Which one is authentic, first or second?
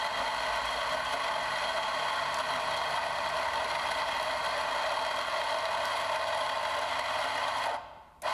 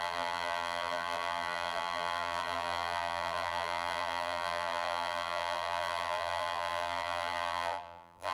first